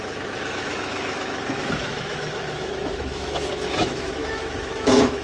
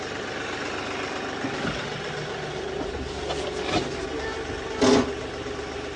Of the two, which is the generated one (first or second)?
first